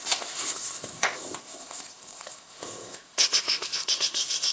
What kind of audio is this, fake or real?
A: fake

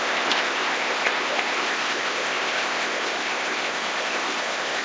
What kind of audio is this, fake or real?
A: fake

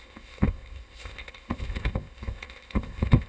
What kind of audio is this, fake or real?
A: fake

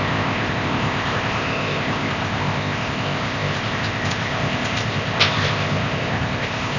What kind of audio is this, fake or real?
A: fake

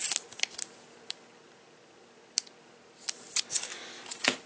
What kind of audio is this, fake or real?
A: real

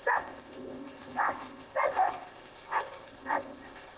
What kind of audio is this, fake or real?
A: fake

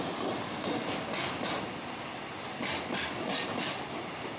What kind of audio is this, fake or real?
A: real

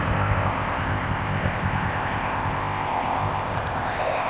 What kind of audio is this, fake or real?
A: fake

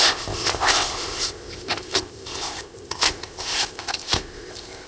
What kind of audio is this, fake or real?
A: fake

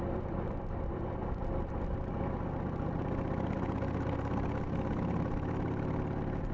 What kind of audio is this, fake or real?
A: real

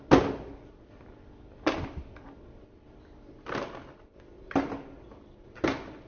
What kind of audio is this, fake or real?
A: real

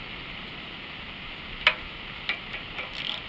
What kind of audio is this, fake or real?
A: real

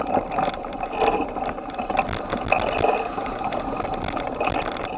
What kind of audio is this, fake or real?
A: real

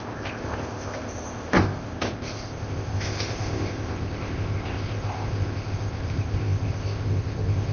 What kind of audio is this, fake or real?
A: fake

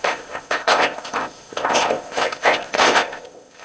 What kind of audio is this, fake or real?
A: fake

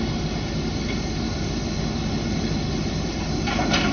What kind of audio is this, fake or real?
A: real